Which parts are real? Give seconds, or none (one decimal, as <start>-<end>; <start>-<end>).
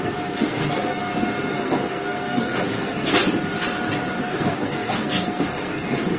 1.0-1.5; 3.2-4.2